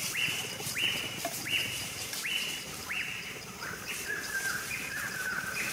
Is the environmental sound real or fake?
fake